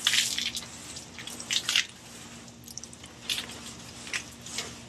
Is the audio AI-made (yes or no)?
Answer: no